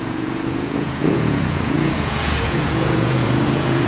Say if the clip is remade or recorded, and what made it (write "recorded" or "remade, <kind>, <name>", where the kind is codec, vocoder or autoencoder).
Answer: remade, vocoder, Vocos